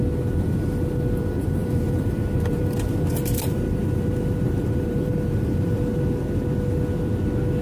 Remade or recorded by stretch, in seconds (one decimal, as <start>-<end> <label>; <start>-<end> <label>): 0.0-1.2 recorded; 1.2-5.8 remade; 5.8-7.6 recorded